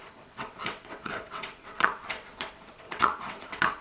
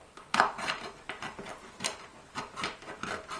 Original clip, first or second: second